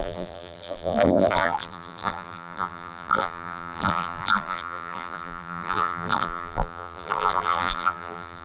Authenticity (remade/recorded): remade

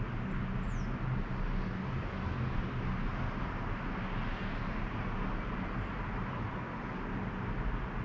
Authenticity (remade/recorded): recorded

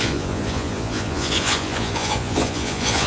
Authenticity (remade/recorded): remade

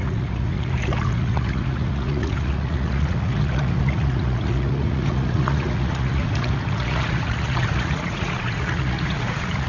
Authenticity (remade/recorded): remade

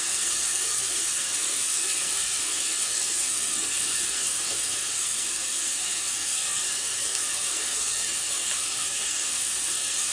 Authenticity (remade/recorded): remade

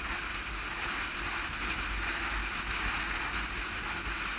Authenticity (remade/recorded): recorded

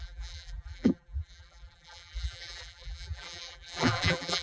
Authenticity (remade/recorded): remade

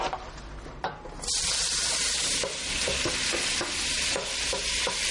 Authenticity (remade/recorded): recorded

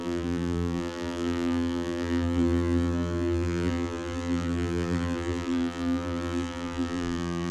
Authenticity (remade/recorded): remade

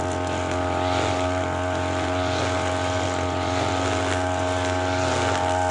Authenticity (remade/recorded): recorded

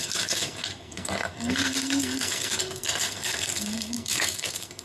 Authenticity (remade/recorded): remade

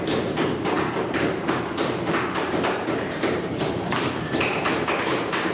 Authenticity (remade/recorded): remade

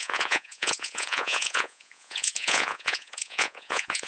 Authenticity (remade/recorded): remade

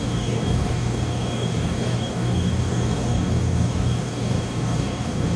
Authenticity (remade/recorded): remade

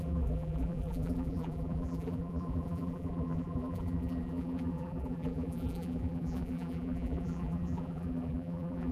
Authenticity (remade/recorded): remade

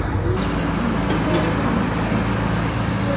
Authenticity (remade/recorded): recorded